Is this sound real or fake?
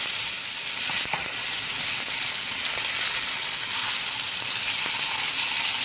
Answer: real